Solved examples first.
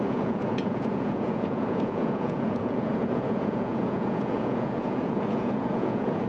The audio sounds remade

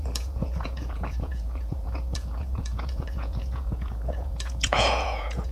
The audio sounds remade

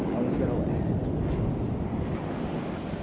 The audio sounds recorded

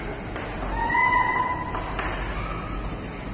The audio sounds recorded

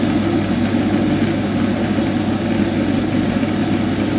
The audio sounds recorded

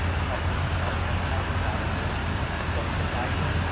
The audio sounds recorded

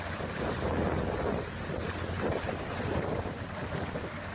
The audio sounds recorded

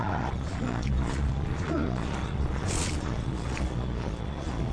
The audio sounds remade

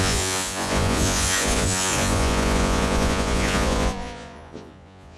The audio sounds remade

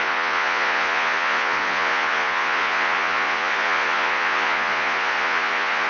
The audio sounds remade